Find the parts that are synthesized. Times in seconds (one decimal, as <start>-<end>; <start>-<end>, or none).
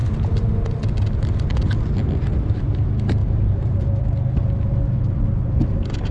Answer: 3.2-3.8